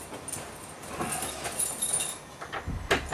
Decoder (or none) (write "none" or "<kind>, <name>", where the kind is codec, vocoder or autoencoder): none